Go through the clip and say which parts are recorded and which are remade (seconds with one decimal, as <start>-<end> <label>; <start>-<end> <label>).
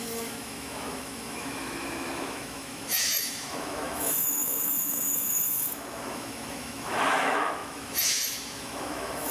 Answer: 0.0-9.3 remade